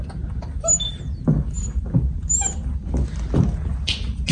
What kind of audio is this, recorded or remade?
recorded